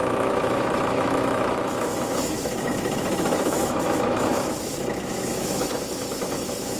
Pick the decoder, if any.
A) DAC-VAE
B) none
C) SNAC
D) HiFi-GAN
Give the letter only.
A